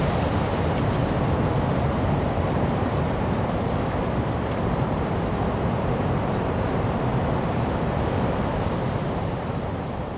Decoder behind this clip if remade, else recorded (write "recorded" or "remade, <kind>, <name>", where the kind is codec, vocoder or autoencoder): remade, vocoder, BigVGAN v2